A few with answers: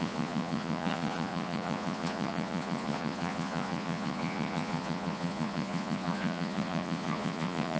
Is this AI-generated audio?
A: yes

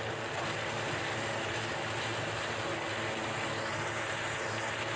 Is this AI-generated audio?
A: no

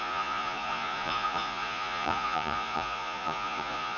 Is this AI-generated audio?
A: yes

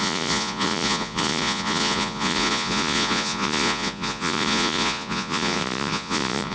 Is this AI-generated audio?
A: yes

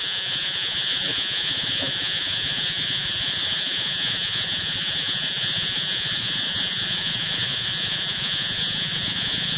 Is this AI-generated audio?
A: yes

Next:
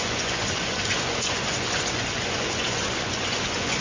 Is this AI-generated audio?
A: yes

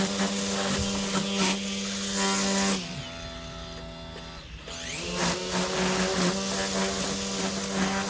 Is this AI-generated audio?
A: no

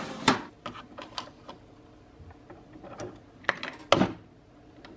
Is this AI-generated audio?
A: no